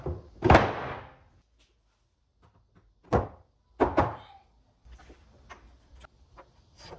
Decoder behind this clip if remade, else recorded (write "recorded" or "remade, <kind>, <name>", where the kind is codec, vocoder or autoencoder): recorded